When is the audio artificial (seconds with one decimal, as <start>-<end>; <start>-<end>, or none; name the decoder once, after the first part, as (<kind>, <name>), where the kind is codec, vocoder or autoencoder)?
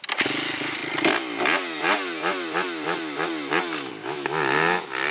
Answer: none